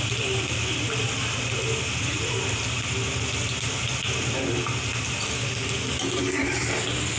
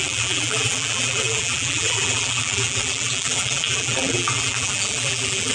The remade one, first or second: second